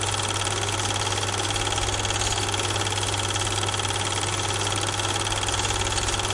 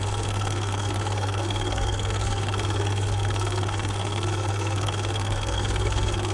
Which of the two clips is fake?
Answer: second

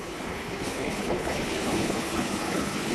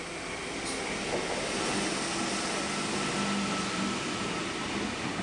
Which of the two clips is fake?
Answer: first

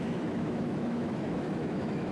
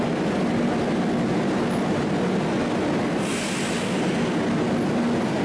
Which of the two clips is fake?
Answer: first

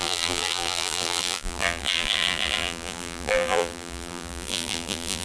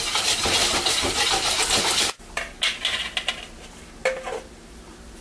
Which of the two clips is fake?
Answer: first